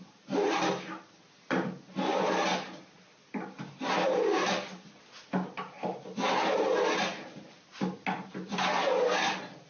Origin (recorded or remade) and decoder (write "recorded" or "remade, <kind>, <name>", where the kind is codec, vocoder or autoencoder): recorded